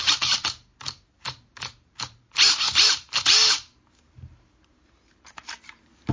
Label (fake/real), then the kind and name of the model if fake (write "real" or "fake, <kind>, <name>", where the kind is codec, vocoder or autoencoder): fake, vocoder, BigVGAN v2